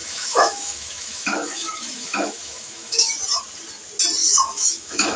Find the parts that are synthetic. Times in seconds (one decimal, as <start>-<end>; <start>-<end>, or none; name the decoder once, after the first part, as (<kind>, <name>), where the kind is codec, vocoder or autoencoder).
0.0-3.1 (autoencoder, DAC-VAE); 4.2-5.2